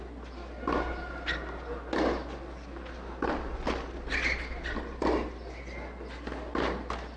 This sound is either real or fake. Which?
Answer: real